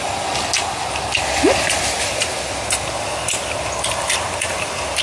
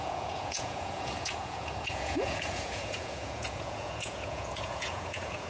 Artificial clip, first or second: second